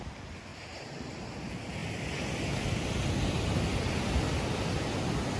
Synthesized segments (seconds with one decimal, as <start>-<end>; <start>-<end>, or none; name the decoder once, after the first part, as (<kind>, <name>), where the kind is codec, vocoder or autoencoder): 0.5-1.3 (vocoder, BigVGAN v2)